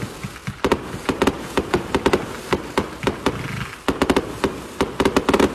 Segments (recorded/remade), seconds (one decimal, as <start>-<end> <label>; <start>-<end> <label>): 0.0-0.4 recorded; 0.4-1.4 remade; 1.4-5.5 recorded